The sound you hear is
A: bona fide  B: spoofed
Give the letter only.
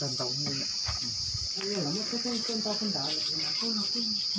A